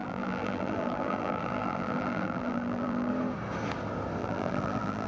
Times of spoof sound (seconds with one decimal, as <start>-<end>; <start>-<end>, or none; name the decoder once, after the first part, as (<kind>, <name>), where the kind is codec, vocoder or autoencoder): 0.0-3.1 (vocoder, BigVGAN v2); 4.2-5.1